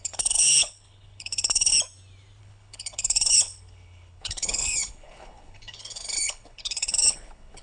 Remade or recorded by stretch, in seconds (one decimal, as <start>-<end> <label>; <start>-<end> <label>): 0.0-1.7 remade; 1.7-2.4 recorded; 2.4-7.6 remade